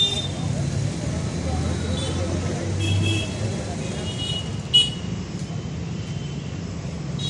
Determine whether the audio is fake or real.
real